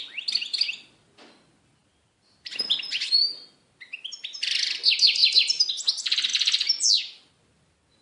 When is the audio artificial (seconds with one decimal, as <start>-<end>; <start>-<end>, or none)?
none